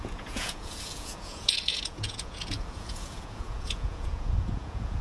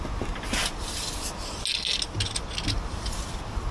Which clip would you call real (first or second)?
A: second